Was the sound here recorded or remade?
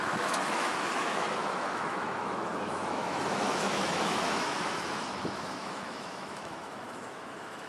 remade